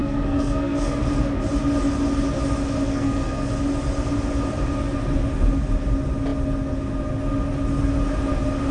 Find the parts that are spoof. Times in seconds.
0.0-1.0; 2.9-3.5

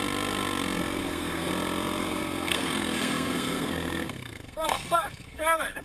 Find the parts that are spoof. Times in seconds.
1.0-1.5; 2.0-5.8